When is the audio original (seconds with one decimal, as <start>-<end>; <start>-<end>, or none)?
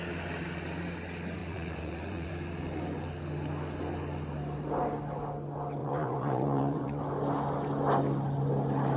0.0-1.4; 2.3-5.8; 7.0-9.0